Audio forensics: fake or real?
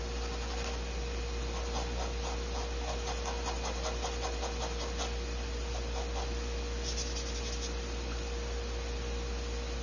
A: real